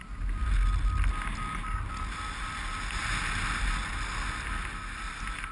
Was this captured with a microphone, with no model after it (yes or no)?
yes